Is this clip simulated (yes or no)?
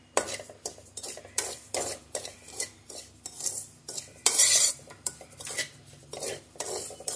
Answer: yes